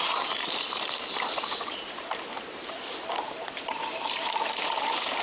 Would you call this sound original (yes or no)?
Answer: no